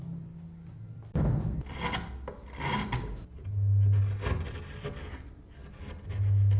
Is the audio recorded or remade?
recorded